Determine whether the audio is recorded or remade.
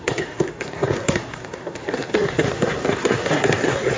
remade